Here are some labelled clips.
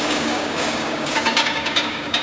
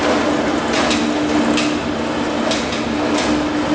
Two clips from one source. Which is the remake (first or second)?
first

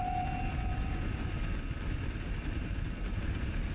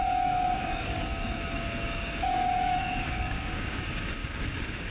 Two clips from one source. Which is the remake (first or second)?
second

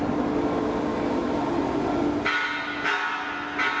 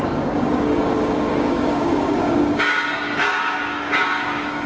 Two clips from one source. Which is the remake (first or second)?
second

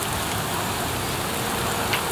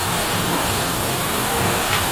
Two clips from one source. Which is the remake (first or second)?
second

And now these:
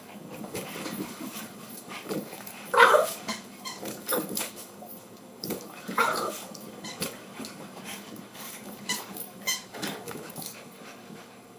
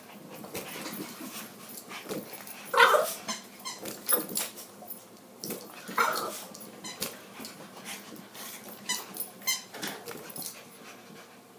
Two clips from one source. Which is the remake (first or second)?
first